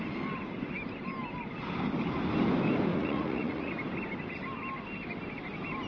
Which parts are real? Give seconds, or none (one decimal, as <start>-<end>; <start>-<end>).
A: 0.0-2.9; 3.7-5.9

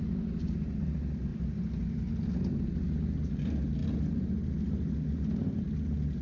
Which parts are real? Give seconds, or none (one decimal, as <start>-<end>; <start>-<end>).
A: 0.0-6.2